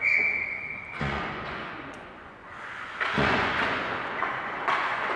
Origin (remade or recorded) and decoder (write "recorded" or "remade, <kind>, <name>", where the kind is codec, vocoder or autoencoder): remade, vocoder, Vocos